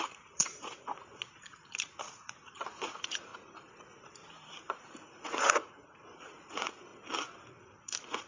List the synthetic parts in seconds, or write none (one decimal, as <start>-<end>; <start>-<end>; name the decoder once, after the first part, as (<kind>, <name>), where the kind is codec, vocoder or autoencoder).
0.0-3.3 (vocoder, Vocos); 4.8-6.9; 7.5-8.3